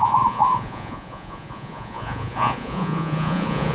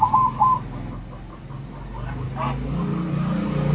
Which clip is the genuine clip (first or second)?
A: second